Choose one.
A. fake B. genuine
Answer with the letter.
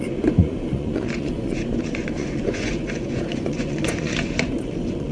A